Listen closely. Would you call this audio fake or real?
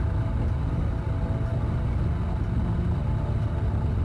real